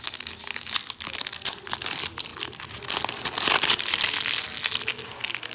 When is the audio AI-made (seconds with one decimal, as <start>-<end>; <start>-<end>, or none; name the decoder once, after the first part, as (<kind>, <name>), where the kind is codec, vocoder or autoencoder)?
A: none